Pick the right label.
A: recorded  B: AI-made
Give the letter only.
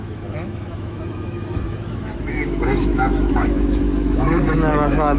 B